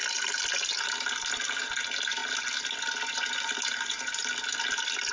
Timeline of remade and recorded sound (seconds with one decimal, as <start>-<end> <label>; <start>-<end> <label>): 0.0-5.1 recorded